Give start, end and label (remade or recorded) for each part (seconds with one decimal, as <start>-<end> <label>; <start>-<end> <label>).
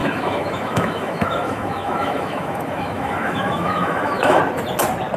0.0-4.4 remade; 4.4-5.2 recorded